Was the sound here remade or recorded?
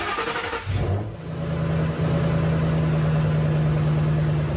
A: recorded